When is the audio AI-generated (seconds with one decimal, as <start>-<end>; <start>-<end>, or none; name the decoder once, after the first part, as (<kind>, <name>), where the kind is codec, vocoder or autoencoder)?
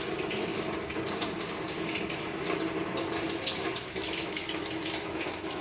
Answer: 3.8-5.6 (autoencoder, DAC-VAE)